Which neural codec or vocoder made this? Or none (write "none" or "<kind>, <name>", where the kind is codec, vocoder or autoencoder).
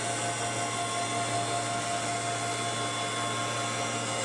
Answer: none